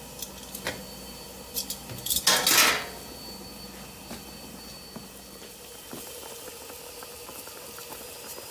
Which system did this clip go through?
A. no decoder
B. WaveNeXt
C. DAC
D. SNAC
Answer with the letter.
A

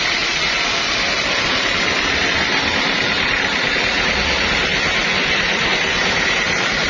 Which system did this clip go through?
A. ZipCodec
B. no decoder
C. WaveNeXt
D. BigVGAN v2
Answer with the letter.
B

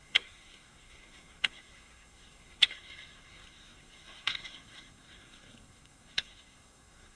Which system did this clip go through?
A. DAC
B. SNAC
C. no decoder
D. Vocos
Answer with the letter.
B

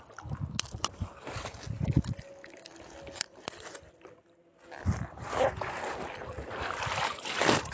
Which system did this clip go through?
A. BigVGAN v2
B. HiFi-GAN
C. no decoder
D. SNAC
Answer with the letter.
C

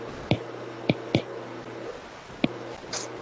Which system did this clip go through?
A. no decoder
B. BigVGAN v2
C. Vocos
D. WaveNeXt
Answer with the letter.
A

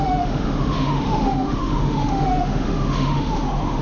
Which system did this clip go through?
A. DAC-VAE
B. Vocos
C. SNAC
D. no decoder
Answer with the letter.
A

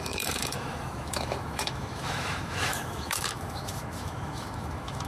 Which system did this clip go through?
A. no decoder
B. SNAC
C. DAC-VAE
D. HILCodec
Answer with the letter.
C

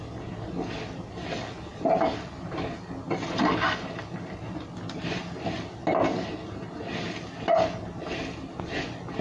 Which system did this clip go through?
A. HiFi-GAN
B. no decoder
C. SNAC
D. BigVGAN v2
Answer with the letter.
B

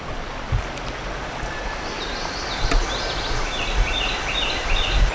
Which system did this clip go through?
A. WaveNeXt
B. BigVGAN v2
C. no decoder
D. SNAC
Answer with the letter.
C